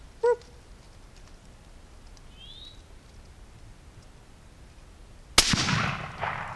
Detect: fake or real real